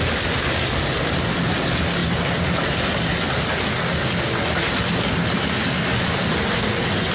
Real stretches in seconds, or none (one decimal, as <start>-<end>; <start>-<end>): 0.0-7.1